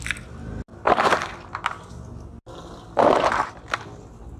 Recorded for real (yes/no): yes